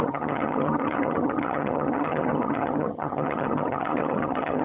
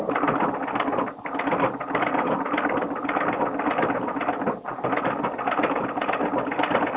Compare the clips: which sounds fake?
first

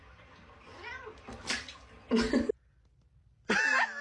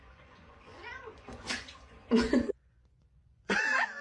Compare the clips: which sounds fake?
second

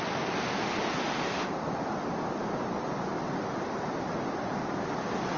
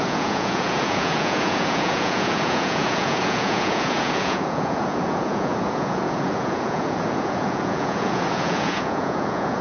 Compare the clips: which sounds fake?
second